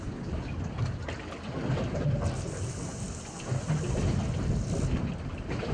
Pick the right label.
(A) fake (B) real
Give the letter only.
B